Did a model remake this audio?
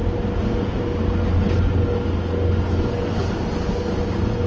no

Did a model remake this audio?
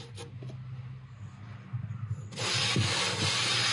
no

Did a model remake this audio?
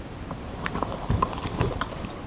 no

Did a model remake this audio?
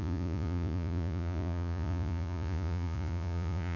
yes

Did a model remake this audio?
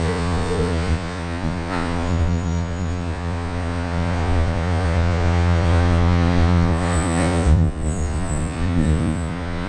yes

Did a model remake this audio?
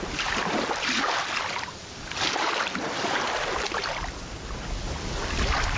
no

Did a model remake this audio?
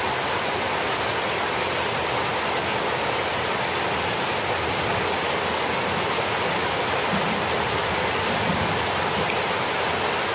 no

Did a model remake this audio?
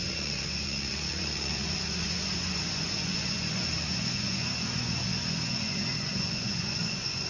yes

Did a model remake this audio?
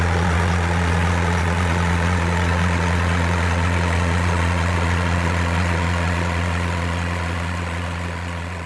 yes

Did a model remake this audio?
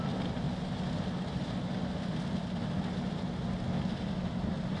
no